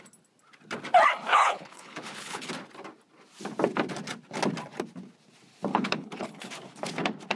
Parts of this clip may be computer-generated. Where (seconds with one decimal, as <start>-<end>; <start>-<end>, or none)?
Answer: 1.3-2.5; 5.7-6.5